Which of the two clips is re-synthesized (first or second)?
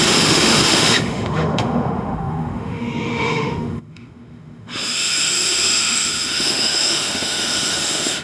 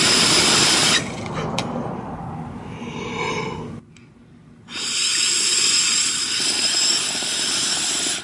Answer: first